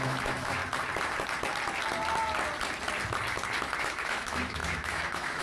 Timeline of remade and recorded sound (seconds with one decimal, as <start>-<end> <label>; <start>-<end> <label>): 0.0-0.6 remade; 0.6-3.8 recorded; 3.8-5.4 remade